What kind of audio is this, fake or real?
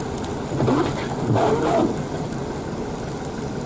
real